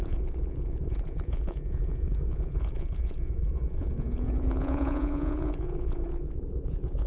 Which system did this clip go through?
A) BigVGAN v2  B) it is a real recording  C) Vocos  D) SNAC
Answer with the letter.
C